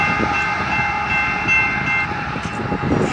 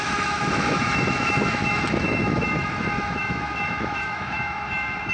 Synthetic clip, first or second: second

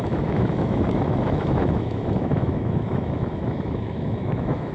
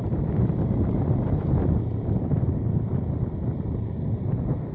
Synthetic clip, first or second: first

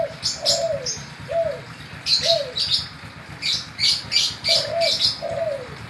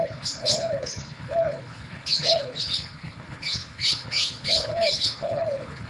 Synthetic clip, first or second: second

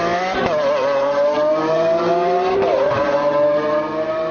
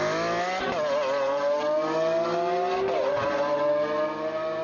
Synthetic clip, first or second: first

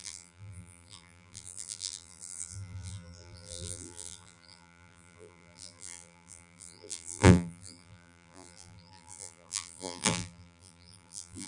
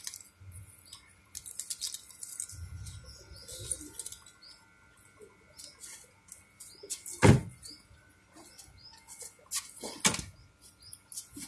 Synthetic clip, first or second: first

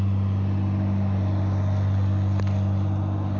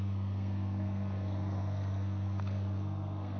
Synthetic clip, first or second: second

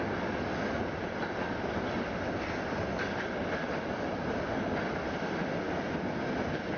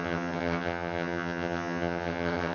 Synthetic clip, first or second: second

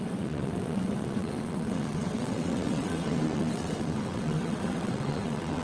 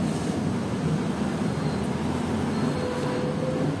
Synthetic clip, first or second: first